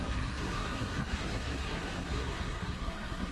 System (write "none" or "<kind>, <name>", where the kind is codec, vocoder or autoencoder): codec, SNAC